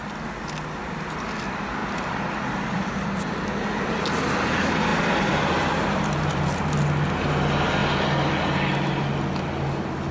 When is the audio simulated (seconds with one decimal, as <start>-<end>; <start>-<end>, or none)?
1.8-2.9; 4.9-6.7